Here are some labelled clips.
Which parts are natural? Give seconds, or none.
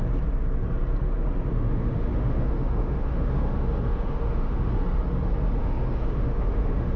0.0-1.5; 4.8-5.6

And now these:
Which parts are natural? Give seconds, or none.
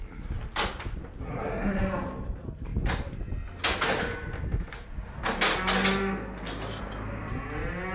0.0-1.2; 1.8-7.9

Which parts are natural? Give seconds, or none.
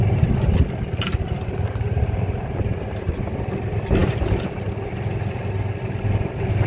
0.0-6.7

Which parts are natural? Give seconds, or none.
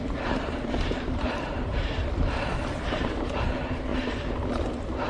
2.0-2.5; 3.9-5.1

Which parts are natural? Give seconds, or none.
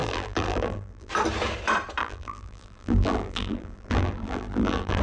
1.1-2.0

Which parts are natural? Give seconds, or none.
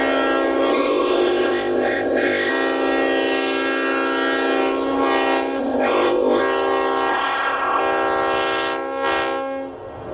0.0-0.7; 2.5-5.6; 6.4-7.1; 7.8-10.1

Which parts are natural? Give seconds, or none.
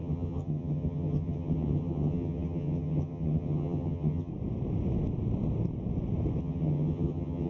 4.3-6.4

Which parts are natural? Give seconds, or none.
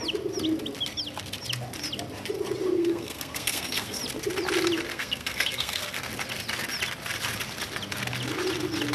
0.0-2.8; 4.0-4.9; 6.0-8.9